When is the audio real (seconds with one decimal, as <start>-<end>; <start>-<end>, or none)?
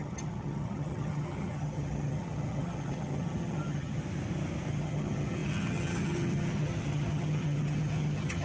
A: 4.0-4.7